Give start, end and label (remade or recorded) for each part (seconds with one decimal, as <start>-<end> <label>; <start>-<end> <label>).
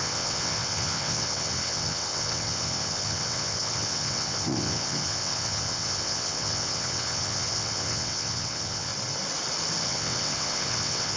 0.0-8.9 remade; 8.9-9.8 recorded; 9.8-11.2 remade